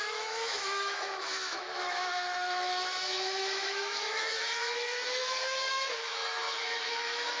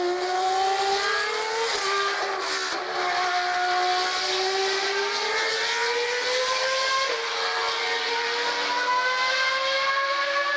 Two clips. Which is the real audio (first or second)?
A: second